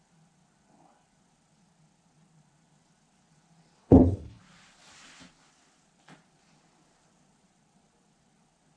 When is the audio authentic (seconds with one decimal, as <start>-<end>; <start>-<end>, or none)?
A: 0.0-3.8; 4.4-8.8